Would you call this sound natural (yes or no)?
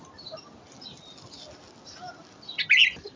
yes